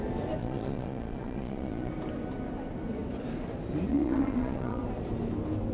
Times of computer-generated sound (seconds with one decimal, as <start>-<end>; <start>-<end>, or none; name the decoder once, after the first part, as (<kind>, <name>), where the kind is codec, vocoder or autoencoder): 0.4-1.9 (vocoder, Vocos); 3.9-4.8